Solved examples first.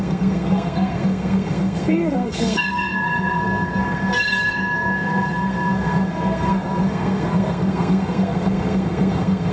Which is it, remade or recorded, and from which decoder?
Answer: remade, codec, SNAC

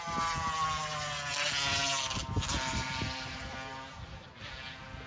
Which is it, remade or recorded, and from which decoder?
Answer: recorded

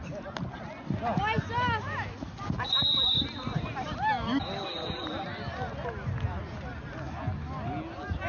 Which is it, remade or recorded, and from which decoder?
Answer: recorded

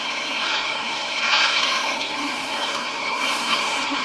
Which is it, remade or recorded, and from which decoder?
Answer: remade, codec, SNAC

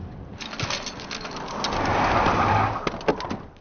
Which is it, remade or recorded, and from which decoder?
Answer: recorded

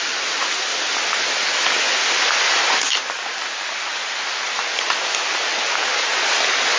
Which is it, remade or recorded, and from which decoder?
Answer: recorded